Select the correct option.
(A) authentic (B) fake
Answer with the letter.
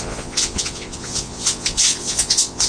B